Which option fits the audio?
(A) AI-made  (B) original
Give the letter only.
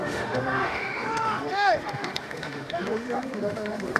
A